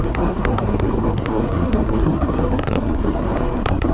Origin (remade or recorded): remade